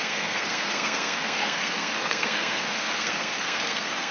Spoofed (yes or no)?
yes